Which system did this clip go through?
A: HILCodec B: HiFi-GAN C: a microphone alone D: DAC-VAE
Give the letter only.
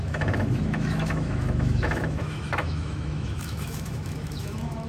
D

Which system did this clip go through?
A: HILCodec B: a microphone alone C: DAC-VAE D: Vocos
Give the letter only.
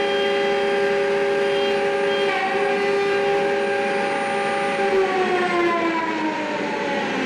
B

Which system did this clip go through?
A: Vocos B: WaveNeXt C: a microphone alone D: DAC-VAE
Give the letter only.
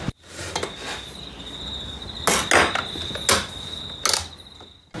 C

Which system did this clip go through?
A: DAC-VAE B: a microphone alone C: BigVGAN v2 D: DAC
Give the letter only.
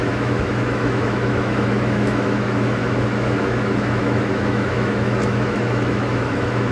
A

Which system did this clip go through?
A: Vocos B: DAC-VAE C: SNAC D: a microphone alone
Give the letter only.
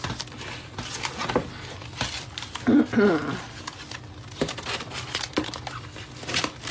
D